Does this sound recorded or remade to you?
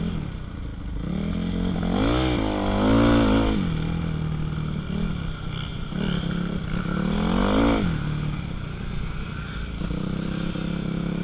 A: recorded